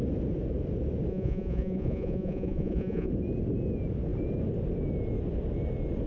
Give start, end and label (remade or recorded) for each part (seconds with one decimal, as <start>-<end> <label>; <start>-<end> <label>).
0.0-1.1 recorded; 1.1-3.1 remade; 3.1-6.1 recorded